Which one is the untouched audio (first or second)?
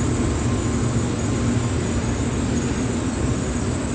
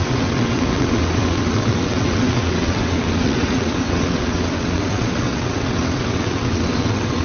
first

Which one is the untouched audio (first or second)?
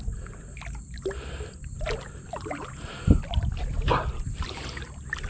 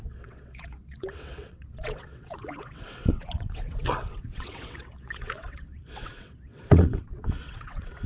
first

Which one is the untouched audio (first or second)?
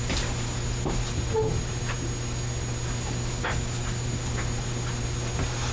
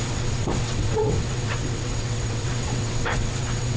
first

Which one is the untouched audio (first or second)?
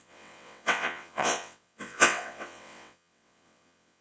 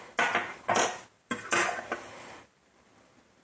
second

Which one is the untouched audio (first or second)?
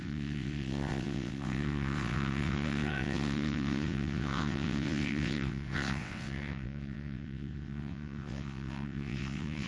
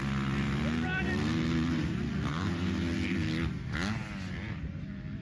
second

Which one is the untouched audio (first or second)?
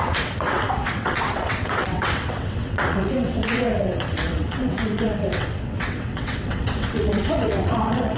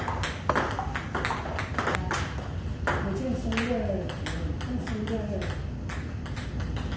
second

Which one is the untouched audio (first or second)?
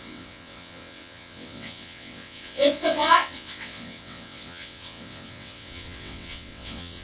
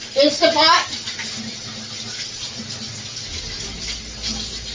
second